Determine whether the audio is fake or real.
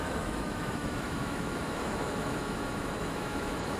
fake